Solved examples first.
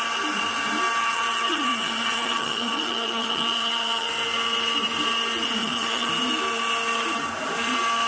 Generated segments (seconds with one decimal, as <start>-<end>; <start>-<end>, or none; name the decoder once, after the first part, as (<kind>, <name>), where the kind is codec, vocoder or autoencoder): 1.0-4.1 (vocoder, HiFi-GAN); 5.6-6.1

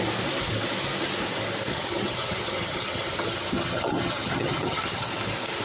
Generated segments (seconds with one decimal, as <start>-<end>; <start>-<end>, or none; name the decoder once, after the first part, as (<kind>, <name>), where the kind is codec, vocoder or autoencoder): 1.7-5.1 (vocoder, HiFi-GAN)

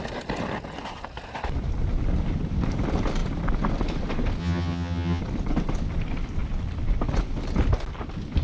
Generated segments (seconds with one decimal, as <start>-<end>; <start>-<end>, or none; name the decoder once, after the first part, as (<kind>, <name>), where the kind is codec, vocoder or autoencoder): 4.4-5.2 (vocoder, HiFi-GAN)